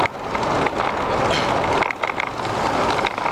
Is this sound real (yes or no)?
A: yes